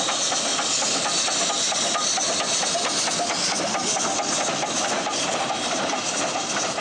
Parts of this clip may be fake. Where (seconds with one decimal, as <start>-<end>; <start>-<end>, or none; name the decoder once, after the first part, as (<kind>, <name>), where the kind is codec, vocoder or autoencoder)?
none